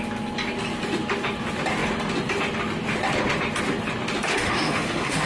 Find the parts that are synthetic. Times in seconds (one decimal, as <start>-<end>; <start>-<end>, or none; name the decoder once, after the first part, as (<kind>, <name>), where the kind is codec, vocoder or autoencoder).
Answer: 4.3-5.3 (autoencoder, DAC-VAE)